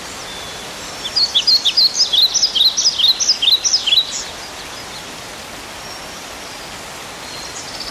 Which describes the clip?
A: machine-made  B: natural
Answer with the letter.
B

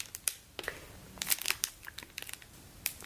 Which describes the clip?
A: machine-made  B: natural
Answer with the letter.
B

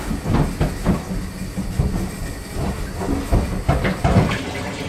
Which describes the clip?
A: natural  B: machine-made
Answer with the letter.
A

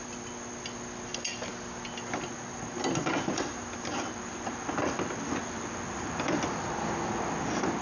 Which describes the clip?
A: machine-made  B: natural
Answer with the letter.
B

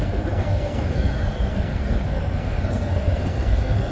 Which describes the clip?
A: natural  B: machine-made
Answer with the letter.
B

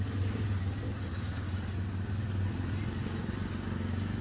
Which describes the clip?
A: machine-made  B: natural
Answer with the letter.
B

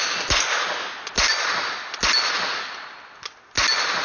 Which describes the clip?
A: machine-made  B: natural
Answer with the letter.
B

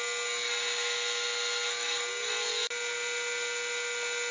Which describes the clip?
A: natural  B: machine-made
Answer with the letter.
A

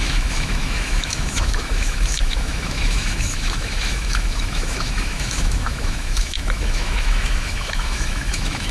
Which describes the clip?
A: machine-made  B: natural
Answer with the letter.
A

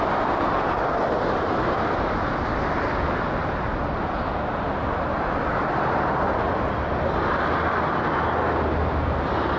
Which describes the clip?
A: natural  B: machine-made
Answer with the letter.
A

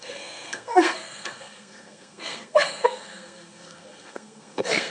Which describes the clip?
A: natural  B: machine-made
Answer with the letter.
B